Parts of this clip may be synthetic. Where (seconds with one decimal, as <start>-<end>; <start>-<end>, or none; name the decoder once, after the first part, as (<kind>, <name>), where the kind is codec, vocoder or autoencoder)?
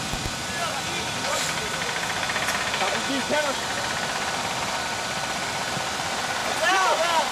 6.4-7.3 (vocoder, BigVGAN v2)